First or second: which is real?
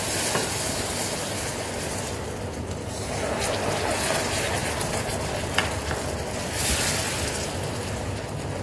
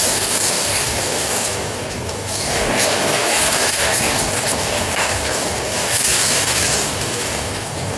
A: first